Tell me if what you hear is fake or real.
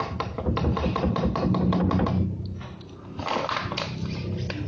real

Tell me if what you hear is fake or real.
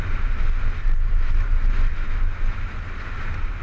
real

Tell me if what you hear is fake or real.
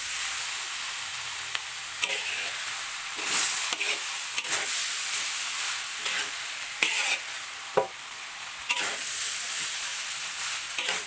real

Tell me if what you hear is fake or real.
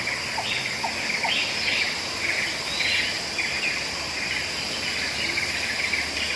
real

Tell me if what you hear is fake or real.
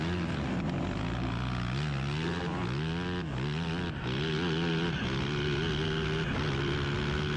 real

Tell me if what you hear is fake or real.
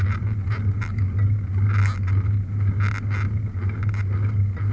real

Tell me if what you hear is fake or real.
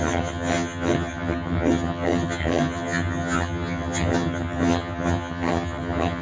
fake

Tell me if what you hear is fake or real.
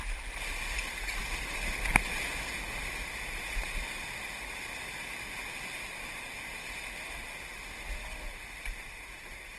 real